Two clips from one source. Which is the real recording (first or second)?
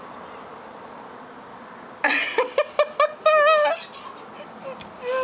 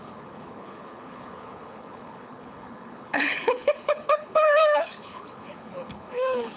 first